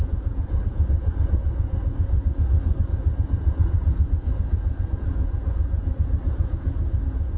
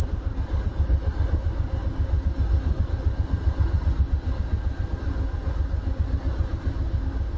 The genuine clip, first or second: second